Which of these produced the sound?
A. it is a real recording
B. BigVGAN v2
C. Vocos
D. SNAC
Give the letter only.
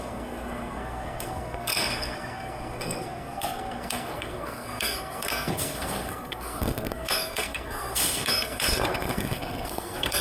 D